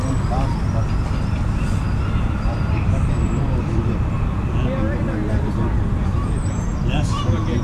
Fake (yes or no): no